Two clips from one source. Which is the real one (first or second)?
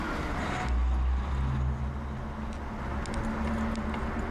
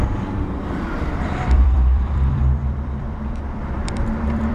first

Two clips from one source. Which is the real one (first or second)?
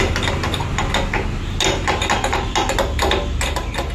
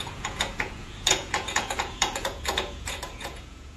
first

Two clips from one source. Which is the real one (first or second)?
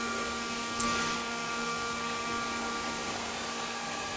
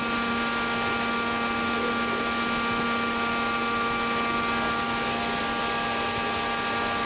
second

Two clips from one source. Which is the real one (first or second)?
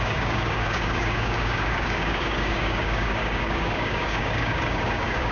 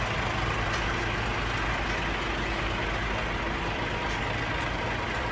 second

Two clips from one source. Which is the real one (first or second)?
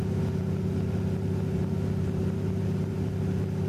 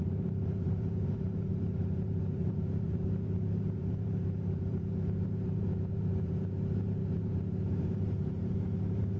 first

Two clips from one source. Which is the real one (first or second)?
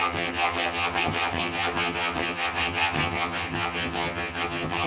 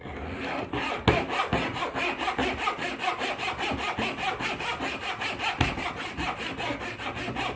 second